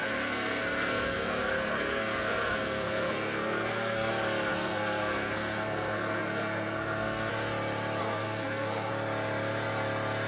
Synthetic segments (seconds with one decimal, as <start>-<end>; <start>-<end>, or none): 0.0-4.1; 4.5-7.3; 8.0-8.9